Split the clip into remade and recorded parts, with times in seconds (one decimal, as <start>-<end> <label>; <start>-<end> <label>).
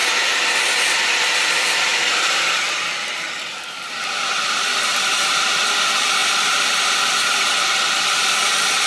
0.0-1.4 recorded; 1.4-8.9 remade